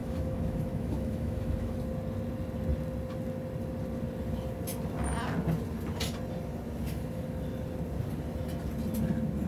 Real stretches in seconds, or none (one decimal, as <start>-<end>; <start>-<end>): 1.8-9.5

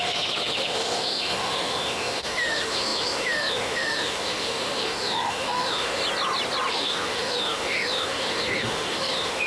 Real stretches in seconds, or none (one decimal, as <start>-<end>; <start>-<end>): 6.0-6.7